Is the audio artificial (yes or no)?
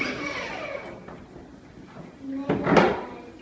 no